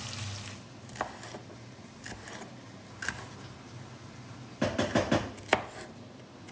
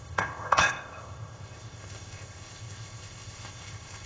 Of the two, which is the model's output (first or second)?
second